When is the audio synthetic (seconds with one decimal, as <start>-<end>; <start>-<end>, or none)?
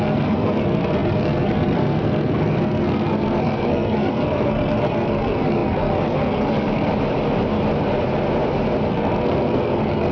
0.0-6.9; 8.9-10.1